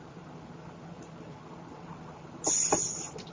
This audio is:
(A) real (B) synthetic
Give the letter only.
A